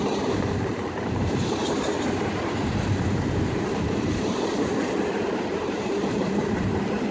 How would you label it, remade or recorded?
remade